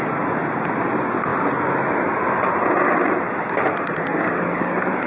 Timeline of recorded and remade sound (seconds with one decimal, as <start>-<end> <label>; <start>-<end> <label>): 0.0-5.1 recorded